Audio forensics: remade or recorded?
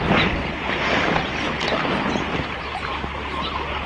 recorded